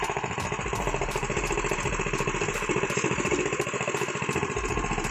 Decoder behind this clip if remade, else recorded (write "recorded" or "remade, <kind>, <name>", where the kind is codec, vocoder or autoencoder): remade, vocoder, BigVGAN v2